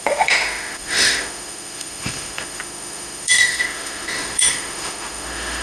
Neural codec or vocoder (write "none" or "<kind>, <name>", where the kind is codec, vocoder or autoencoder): autoencoder, DAC-VAE